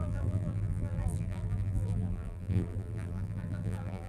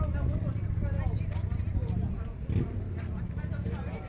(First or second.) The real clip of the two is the second